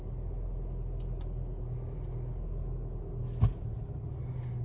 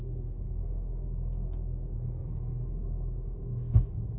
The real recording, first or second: first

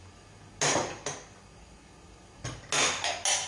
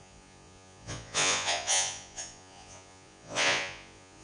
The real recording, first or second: first